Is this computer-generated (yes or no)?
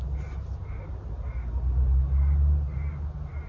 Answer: no